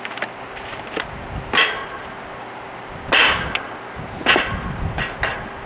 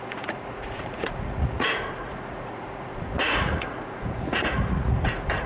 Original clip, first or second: first